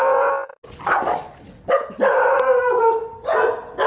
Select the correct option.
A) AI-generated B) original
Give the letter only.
B